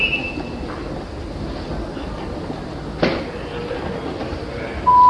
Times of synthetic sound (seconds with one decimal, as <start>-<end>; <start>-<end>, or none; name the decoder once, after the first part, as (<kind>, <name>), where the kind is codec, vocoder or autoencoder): none